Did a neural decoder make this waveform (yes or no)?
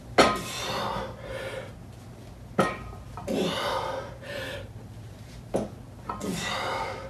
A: no